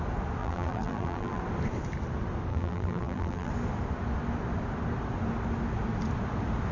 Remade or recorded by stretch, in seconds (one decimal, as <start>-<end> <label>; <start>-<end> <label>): 0.0-0.4 recorded; 0.4-1.4 remade; 1.4-2.5 recorded; 2.5-3.5 remade; 3.5-6.7 recorded

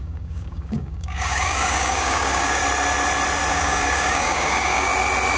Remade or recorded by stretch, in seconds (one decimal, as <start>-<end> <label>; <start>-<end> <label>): 0.0-2.6 remade; 2.6-3.5 recorded; 3.5-4.9 remade; 4.9-5.4 recorded

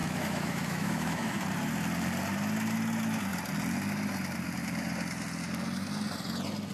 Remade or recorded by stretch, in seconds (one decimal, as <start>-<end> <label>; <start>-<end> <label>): 0.0-1.4 remade; 1.4-6.7 recorded

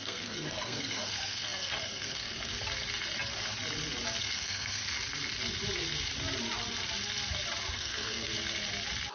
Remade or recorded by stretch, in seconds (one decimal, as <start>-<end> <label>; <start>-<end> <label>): 0.0-2.5 remade; 2.5-4.2 recorded; 4.2-4.8 remade; 4.8-7.7 recorded; 7.7-8.3 remade; 8.3-9.1 recorded